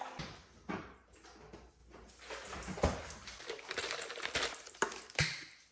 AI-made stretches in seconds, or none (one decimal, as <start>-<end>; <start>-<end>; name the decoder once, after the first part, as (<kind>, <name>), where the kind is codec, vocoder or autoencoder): none